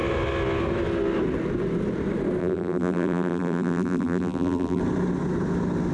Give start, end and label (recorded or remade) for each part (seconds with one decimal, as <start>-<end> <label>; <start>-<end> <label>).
0.0-2.4 recorded; 2.4-4.8 remade; 4.8-5.9 recorded